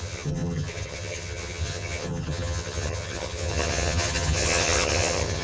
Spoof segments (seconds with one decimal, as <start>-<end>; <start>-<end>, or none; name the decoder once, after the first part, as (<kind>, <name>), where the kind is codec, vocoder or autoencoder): 0.0-5.4 (vocoder, HiFi-GAN)